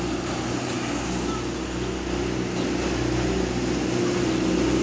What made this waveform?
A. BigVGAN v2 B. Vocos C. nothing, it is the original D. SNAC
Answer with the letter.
C